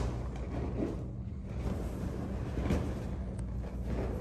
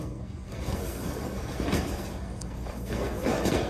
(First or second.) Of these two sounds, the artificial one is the second